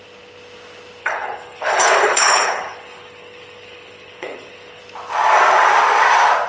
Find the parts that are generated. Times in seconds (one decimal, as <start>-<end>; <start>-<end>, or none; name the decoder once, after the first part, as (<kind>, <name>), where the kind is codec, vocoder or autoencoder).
1.0-4.8 (codec, HILCodec)